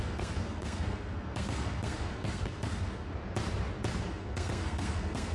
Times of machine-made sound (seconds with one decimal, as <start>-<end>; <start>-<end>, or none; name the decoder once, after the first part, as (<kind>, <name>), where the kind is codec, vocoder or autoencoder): 0.0-3.1 (codec, SNAC); 4.0-5.3